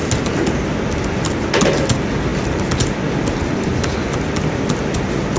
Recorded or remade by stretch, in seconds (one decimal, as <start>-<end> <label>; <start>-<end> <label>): 0.0-5.4 recorded